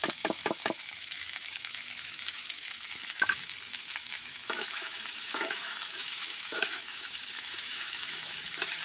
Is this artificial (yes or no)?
yes